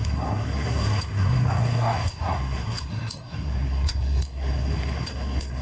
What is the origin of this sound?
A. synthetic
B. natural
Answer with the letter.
A